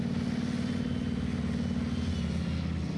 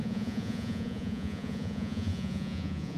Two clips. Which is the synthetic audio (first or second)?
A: second